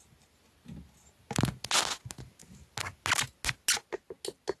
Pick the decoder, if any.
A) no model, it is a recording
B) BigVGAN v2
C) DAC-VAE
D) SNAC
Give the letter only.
A